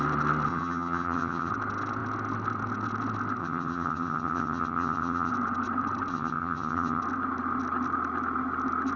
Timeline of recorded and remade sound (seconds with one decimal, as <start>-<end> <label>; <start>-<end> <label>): 0.0-0.5 recorded; 0.5-1.5 remade; 1.5-3.4 recorded; 3.4-5.3 remade; 5.3-6.1 recorded; 6.1-7.0 remade; 7.0-9.0 recorded